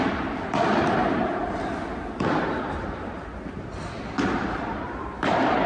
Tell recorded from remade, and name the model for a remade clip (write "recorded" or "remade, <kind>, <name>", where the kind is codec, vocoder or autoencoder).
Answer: remade, vocoder, BigVGAN v2